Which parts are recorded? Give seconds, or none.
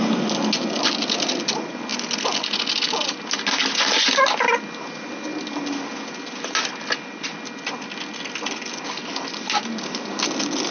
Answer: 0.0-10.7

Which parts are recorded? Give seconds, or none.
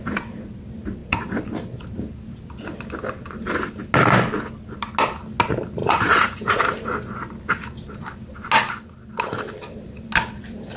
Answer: 0.0-5.8; 6.6-10.8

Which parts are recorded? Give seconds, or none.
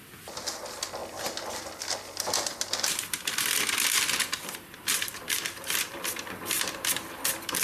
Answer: 1.0-2.7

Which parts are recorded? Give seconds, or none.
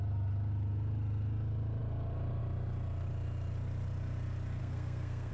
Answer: 0.0-4.6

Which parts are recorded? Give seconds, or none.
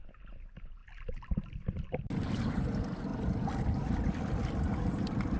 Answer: 0.0-3.1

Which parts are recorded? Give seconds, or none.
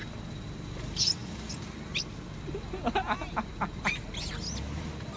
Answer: 0.0-5.2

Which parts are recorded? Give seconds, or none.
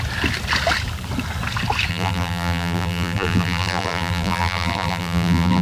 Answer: 0.0-1.9